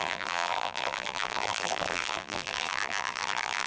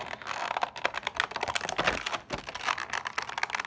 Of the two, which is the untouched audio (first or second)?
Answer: second